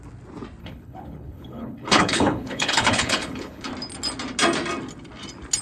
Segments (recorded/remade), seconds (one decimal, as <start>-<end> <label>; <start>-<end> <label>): 0.0-0.6 recorded; 0.6-3.7 remade; 3.7-5.6 recorded